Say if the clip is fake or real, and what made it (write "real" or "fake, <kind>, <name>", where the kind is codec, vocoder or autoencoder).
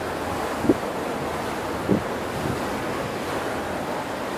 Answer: real